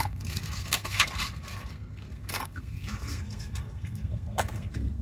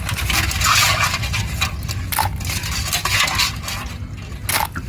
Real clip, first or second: second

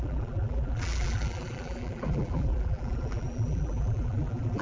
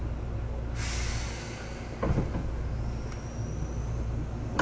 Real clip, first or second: second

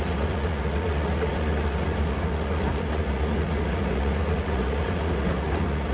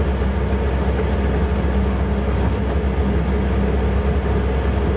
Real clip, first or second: second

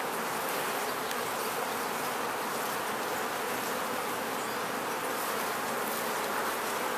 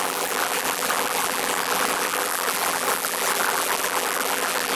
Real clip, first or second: first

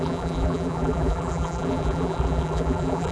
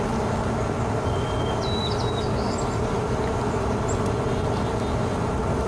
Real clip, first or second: second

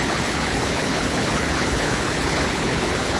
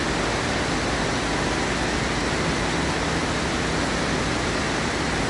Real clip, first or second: second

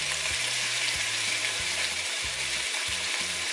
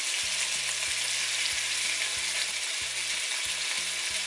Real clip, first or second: second